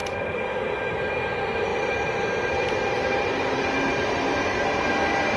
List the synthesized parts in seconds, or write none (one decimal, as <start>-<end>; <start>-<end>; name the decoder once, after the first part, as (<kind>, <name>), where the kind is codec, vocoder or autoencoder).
1.7-4.9 (vocoder, BigVGAN v2)